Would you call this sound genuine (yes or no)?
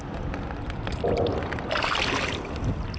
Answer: yes